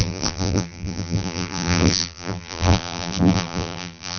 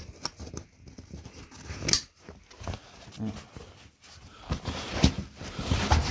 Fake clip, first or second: first